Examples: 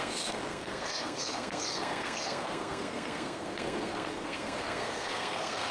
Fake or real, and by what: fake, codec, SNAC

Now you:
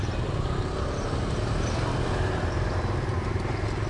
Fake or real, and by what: real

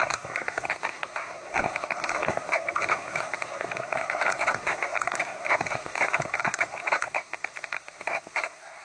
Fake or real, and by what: fake, codec, SNAC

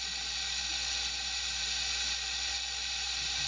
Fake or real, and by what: real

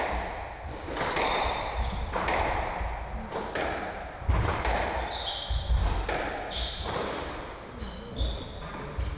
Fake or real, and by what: real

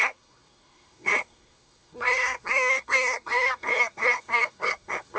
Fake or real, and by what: fake, codec, SNAC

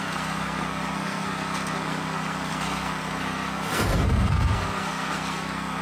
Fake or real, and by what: fake, codec, SNAC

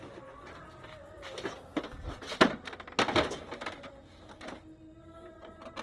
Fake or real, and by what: real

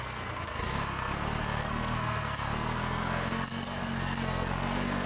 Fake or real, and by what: fake, codec, SNAC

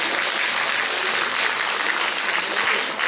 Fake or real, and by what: real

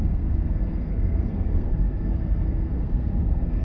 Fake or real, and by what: fake, codec, SNAC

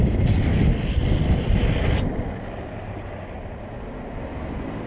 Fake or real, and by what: real